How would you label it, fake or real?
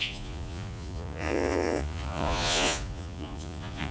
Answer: fake